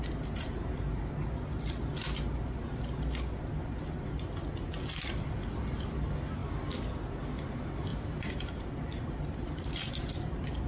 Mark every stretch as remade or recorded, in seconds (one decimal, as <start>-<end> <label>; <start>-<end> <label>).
0.0-7.9 recorded; 7.9-8.7 remade; 8.7-10.7 recorded